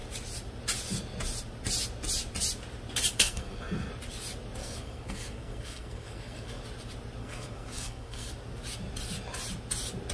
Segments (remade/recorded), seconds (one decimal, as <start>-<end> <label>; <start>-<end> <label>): 0.0-3.2 recorded; 3.2-3.9 remade; 3.9-4.6 recorded; 4.6-6.6 remade; 6.6-7.2 recorded; 7.2-8.3 remade; 8.3-10.1 recorded